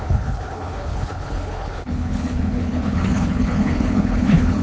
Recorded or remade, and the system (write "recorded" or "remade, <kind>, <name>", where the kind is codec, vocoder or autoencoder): remade, codec, HILCodec